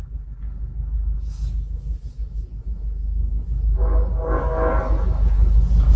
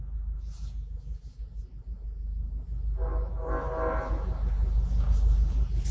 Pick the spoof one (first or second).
first